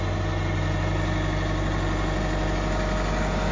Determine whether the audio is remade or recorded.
recorded